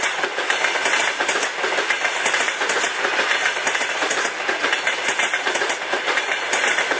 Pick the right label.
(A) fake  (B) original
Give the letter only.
B